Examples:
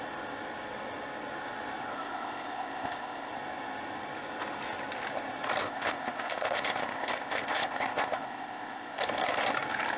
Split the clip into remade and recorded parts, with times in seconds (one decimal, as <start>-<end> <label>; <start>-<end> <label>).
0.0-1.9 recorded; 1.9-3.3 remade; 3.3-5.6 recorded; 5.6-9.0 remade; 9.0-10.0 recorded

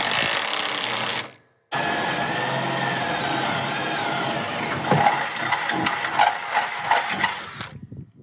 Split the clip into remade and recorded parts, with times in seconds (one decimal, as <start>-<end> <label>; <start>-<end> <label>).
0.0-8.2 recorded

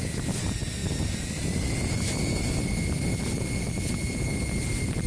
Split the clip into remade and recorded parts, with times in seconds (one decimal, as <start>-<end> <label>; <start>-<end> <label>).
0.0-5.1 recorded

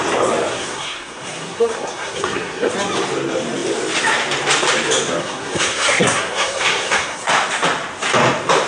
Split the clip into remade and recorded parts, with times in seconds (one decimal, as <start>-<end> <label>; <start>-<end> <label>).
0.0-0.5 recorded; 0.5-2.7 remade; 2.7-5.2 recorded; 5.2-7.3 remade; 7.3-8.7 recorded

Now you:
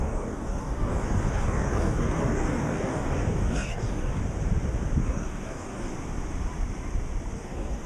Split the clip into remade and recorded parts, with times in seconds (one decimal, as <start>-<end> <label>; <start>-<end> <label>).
0.0-4.2 remade; 4.2-5.0 recorded; 5.0-5.9 remade; 5.9-7.3 recorded; 7.3-7.9 remade

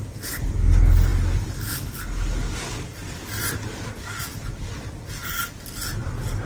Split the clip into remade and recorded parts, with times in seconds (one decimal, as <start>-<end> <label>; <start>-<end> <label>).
0.0-6.5 recorded

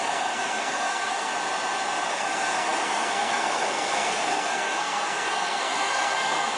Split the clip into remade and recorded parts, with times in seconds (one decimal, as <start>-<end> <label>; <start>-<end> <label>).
0.0-1.3 remade; 1.3-2.1 recorded; 2.1-6.6 remade

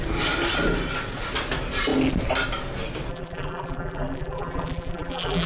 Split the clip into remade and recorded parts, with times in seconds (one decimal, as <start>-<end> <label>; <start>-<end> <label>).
0.0-3.1 recorded; 3.1-5.5 remade